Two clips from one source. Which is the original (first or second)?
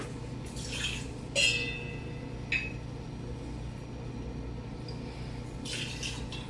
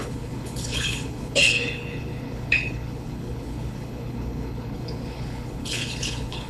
first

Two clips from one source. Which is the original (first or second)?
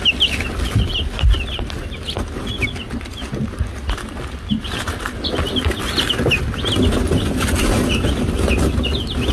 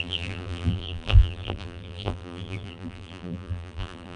first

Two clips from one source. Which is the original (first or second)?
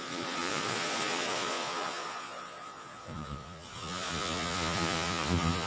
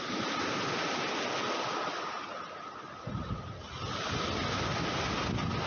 second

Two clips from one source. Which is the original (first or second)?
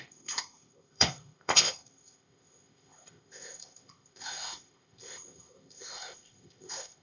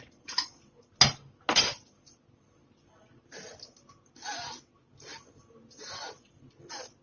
second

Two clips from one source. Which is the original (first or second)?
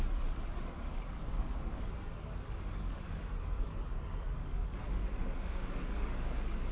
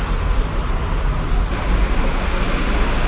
second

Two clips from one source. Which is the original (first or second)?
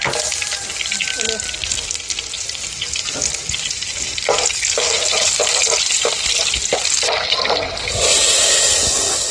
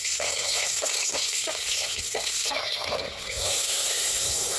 first